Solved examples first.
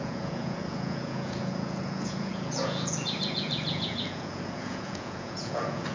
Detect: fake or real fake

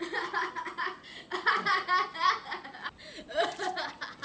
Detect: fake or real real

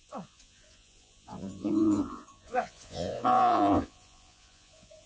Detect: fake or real fake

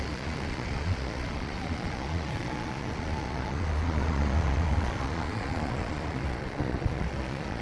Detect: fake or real fake